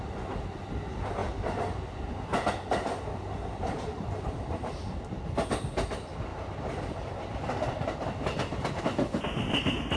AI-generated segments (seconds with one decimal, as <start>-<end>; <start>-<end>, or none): 6.3-8.8

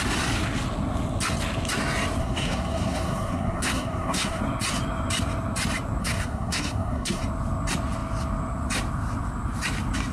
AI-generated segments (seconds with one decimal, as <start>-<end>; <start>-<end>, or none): 2.2-4.4; 6.0-7.2

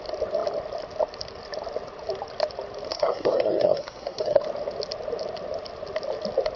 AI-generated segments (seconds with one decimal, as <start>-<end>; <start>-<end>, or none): 2.9-4.4

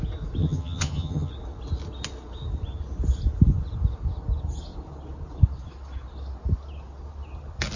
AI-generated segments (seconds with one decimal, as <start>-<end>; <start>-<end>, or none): 0.4-1.3

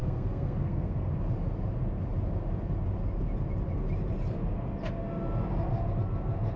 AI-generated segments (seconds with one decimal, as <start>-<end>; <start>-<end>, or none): 0.0-1.1